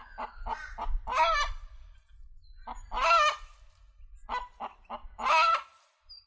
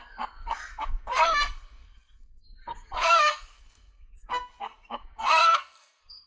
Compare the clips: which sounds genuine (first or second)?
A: first